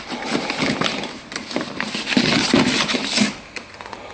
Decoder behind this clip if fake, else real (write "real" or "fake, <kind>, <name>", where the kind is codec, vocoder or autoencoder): real